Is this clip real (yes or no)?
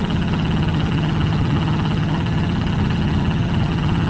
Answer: no